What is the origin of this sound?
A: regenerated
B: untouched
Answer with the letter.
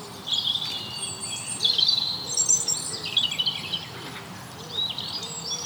A